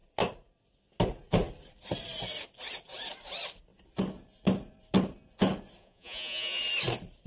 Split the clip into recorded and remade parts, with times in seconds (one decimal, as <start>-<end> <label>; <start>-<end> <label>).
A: 0.0-5.8 recorded; 5.8-6.6 remade; 6.6-7.3 recorded